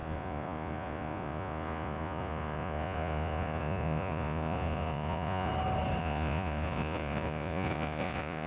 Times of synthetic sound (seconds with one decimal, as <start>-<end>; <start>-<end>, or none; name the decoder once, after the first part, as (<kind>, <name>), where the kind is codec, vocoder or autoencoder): 0.0-5.5 (vocoder, Vocos); 6.0-8.5